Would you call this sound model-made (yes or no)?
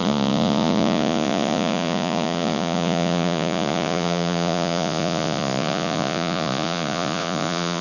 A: yes